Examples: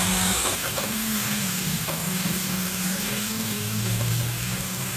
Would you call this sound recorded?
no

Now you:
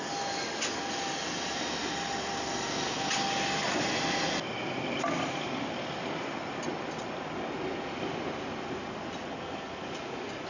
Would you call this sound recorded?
yes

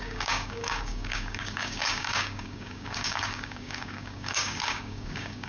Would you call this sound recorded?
no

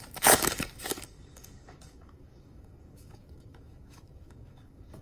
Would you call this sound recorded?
no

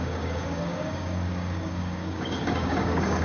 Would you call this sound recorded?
no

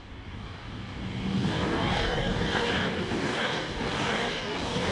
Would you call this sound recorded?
no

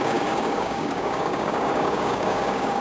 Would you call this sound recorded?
no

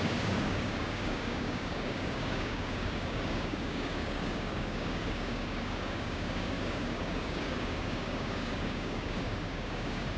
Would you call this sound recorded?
no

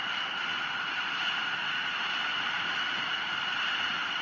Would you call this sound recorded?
yes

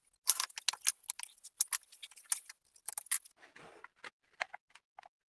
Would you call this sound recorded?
yes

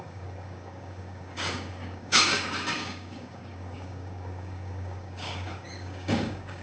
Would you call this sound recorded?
no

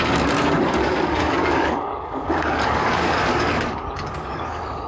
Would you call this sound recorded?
no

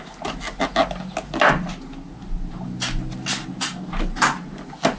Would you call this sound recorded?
yes